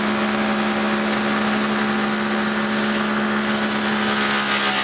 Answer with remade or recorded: recorded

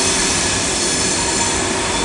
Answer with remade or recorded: recorded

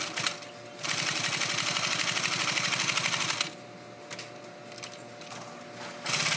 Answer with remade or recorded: recorded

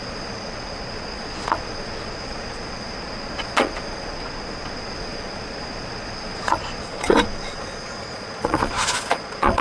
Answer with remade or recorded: remade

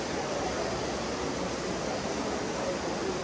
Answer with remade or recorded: recorded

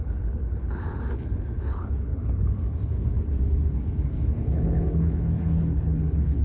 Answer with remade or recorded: remade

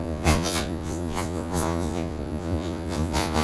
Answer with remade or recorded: remade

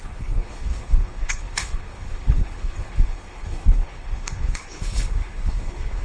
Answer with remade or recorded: remade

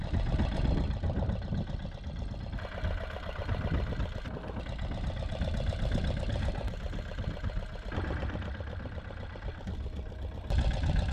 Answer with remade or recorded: recorded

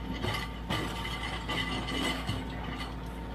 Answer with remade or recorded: recorded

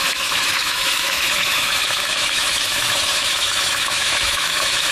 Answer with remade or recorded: remade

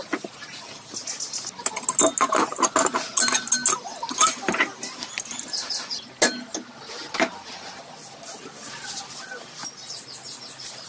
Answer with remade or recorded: recorded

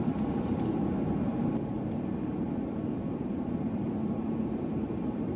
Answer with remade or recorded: remade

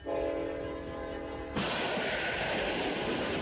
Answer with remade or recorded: recorded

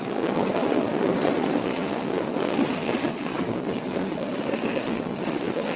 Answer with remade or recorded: remade